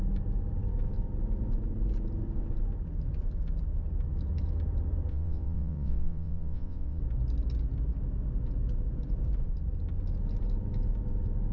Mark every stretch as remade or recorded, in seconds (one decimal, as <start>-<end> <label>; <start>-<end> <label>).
0.0-5.1 recorded; 5.1-7.0 remade; 7.0-11.5 recorded